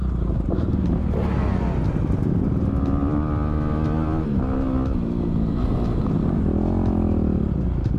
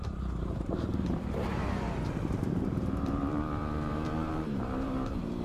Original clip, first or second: first